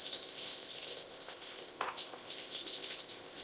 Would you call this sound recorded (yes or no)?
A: no